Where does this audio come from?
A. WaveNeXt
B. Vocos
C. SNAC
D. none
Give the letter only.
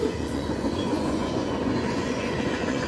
B